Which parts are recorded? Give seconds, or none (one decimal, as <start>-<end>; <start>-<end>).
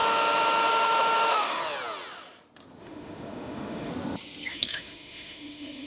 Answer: 0.0-0.7; 1.6-2.8; 3.9-4.5